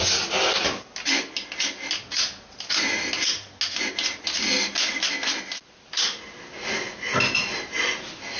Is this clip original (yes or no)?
yes